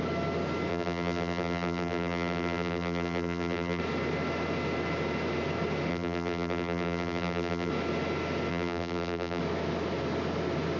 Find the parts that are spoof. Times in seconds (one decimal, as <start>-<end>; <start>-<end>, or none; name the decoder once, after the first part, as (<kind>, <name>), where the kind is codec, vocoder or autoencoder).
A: 0.7-3.8 (vocoder, BigVGAN v2); 5.9-7.7; 8.5-9.4